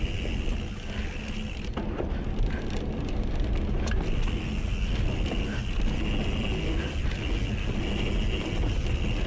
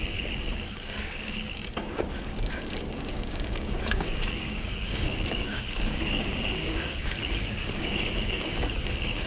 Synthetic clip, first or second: second